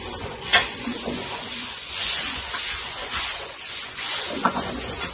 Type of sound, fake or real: fake